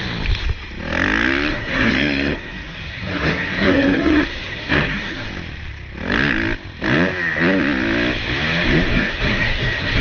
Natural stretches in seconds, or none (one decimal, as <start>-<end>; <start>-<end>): 0.0-1.5; 5.3-8.9